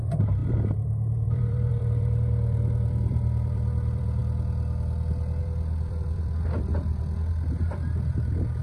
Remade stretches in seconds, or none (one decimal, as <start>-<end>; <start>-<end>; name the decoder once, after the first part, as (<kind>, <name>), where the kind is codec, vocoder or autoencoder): 0.0-4.2 (vocoder, BigVGAN v2); 5.4-8.6